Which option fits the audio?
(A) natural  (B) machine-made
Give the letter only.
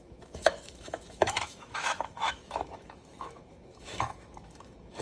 B